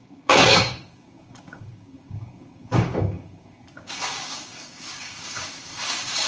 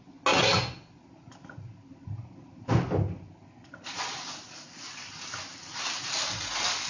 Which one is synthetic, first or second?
first